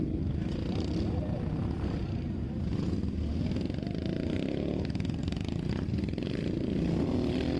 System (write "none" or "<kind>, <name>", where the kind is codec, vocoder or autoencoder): none